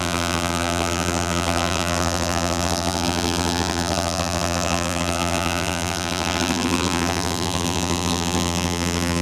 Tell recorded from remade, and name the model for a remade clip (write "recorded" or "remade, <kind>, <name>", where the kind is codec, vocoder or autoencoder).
remade, vocoder, BigVGAN v2